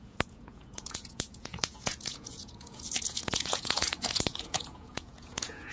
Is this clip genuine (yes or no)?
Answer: no